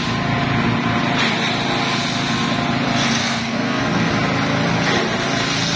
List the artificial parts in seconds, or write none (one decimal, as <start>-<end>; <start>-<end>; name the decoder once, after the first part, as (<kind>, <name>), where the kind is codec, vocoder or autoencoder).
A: 3.2-4.1 (codec, SNAC)